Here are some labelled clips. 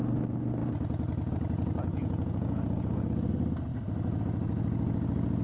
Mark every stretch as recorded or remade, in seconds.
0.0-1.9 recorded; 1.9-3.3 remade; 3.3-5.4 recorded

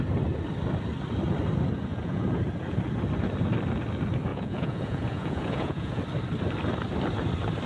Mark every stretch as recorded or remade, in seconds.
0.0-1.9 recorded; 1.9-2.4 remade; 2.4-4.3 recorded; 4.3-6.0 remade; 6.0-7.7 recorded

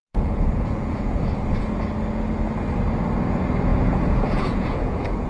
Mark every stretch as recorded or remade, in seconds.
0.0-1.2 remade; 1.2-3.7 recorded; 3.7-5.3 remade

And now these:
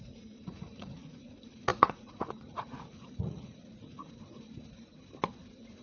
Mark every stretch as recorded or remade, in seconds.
0.0-4.0 remade; 4.0-5.8 recorded

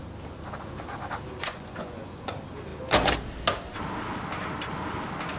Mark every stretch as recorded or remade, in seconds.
0.0-1.4 recorded; 1.4-2.3 remade; 2.3-5.4 recorded